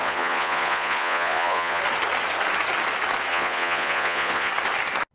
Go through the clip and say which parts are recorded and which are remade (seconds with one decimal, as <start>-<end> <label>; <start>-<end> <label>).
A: 0.0-1.8 remade; 1.8-3.3 recorded; 3.3-4.5 remade; 4.5-5.1 recorded